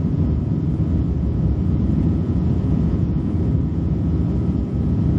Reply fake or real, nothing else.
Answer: fake